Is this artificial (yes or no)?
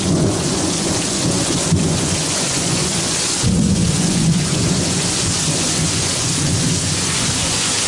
yes